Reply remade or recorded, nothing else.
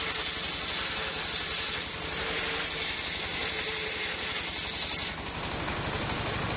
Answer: recorded